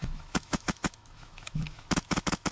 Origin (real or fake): fake